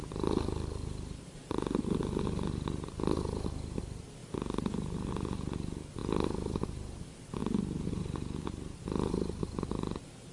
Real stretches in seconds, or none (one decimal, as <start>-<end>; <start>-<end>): 0.0-10.3